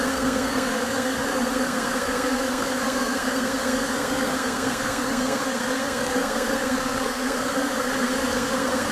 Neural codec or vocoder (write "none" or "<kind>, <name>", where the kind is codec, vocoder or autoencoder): codec, SNAC